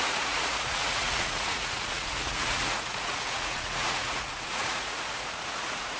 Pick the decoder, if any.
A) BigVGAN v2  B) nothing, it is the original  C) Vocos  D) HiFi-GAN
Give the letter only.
C